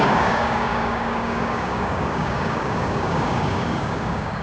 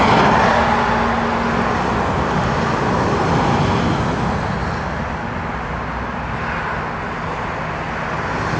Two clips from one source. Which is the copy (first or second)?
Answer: first